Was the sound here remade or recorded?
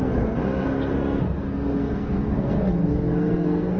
remade